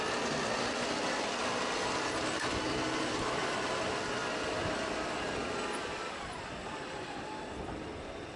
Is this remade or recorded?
remade